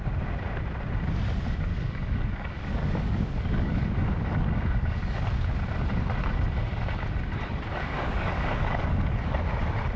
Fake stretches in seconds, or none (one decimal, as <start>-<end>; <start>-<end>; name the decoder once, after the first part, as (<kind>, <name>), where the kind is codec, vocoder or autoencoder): 1.7-5.2 (codec, DAC); 7.7-9.4